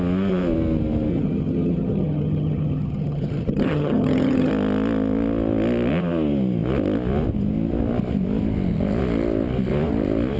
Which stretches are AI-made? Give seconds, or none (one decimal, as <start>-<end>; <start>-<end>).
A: 1.1-4.5